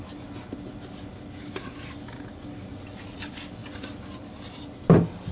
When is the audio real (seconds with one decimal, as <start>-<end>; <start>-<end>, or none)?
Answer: 0.0-5.3